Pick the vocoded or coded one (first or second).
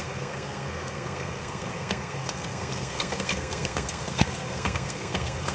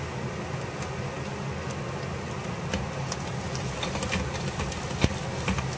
first